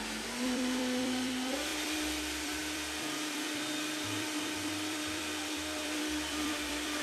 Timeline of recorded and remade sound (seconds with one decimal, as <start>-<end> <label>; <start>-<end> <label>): 0.0-7.0 remade